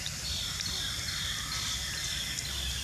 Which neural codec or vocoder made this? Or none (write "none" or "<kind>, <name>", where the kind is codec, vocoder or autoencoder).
none